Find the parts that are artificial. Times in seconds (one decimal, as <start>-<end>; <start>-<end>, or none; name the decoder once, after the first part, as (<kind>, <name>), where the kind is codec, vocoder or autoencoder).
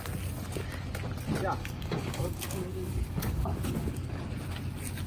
1.6-4.2 (codec, DAC)